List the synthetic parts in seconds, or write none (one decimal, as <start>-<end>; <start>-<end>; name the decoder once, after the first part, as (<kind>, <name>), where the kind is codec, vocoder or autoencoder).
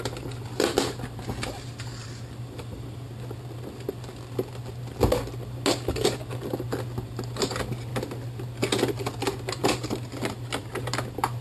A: 2.0-3.1 (vocoder, BigVGAN v2)